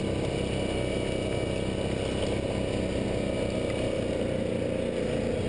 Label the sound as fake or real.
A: real